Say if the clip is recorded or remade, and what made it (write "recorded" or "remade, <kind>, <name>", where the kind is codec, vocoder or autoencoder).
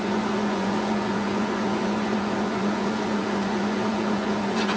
remade, vocoder, Vocos